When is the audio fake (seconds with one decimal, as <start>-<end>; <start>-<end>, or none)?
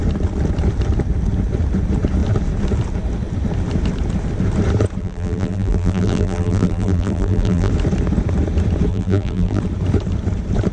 5.0-7.7; 8.9-9.6